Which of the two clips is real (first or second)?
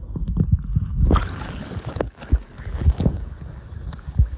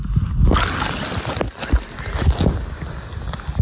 second